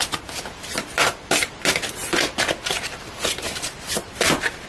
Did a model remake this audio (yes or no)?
no